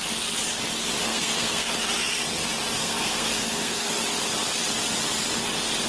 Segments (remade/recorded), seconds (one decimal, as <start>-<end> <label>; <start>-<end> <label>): 0.0-1.1 recorded; 1.1-1.7 remade; 1.7-2.8 recorded; 2.8-3.9 remade; 3.9-5.9 recorded